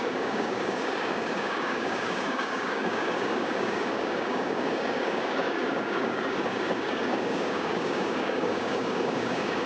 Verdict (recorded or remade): remade